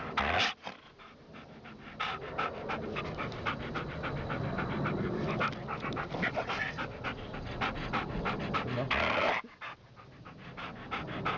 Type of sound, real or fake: real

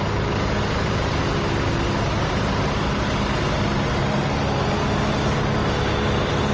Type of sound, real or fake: real